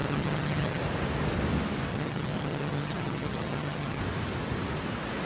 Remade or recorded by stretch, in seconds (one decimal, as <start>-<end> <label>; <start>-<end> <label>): 0.0-0.8 remade; 0.8-1.9 recorded; 1.9-4.0 remade; 4.0-5.3 recorded